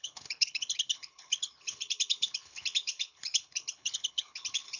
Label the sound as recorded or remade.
remade